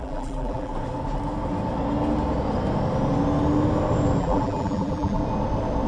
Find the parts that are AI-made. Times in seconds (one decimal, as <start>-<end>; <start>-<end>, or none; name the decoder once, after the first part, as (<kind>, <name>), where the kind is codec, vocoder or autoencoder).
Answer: 0.0-0.7 (vocoder, BigVGAN v2); 4.2-5.2